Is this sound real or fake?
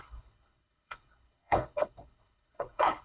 fake